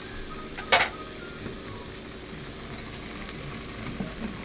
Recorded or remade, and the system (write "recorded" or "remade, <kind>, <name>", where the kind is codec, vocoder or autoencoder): recorded